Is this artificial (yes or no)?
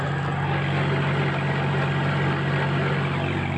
no